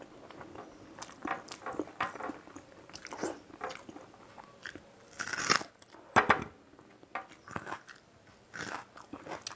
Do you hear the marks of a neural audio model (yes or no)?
no